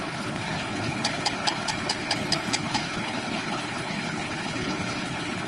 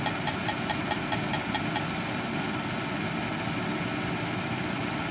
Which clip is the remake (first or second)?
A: first